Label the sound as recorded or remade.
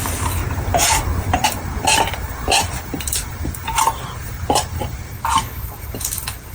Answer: remade